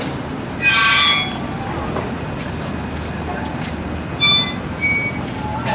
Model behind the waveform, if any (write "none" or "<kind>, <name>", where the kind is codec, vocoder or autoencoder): none